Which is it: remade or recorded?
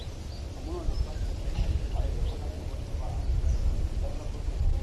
recorded